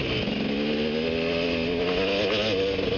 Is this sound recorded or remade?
recorded